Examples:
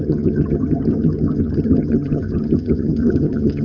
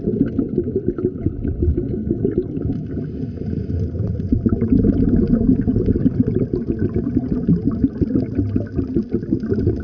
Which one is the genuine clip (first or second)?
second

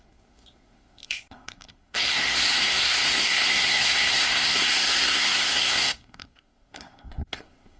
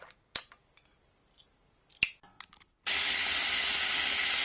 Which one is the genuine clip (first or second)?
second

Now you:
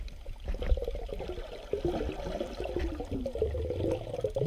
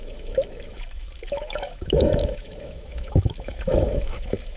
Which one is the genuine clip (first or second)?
first